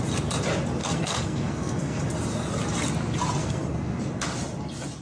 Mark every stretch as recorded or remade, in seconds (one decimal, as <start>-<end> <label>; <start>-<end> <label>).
0.0-0.8 recorded; 0.8-2.0 remade; 2.0-3.4 recorded; 3.4-4.0 remade; 4.0-5.0 recorded